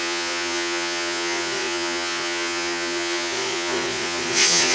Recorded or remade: remade